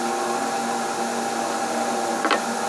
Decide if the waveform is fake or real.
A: real